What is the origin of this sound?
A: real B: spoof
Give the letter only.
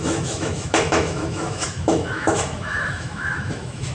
B